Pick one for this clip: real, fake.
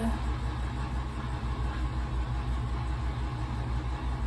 real